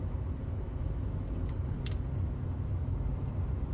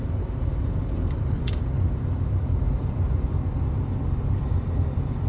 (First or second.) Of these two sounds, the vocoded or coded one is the second